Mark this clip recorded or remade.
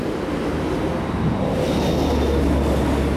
recorded